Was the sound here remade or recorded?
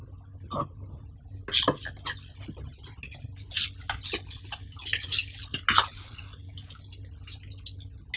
recorded